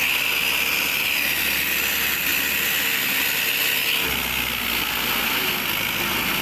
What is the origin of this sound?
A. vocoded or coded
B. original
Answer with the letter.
B